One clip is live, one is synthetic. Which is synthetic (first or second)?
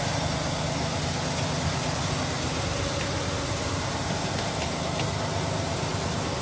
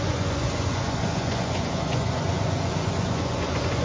second